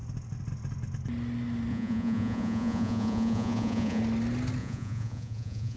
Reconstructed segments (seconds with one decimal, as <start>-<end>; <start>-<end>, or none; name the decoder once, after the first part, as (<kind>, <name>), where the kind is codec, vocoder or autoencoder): 1.7-4.0 (vocoder, Vocos); 4.6-5.8